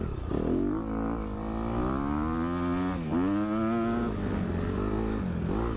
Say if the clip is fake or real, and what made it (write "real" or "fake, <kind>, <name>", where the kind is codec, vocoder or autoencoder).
real